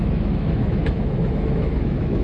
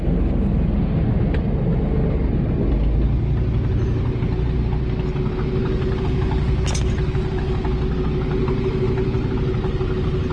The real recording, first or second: second